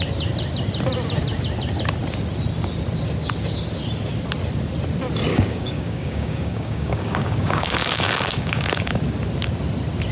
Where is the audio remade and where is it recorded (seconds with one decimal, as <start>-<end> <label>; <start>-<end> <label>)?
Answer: 0.0-5.3 recorded; 5.3-9.0 remade; 9.0-10.1 recorded